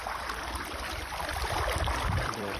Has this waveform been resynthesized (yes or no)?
yes